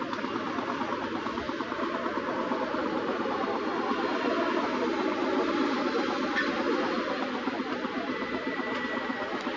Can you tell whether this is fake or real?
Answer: real